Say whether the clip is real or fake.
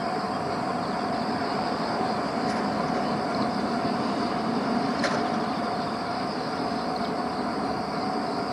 fake